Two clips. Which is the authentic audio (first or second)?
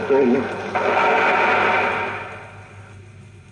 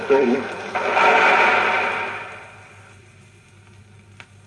first